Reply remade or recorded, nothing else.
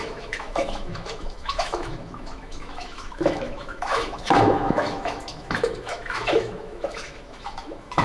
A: remade